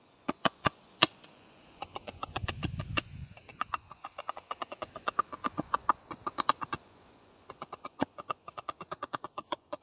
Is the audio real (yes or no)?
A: no